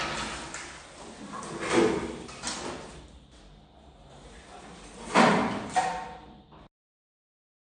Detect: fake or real real